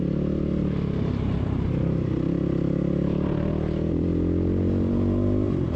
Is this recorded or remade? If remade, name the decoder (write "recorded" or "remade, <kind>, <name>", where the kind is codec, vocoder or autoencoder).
recorded